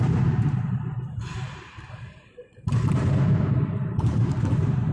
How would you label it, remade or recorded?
remade